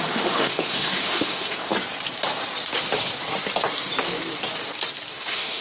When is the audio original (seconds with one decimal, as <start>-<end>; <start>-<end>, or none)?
1.7-5.1